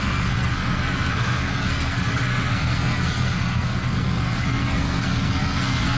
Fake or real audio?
fake